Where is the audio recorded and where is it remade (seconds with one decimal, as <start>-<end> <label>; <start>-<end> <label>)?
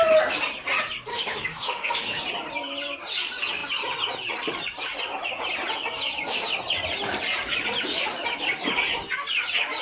0.0-1.1 recorded; 1.1-2.2 remade; 2.2-9.8 recorded